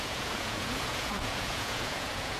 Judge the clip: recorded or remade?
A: remade